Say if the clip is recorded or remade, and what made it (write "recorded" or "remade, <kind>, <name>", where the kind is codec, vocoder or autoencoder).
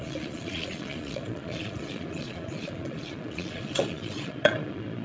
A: remade, vocoder, Vocos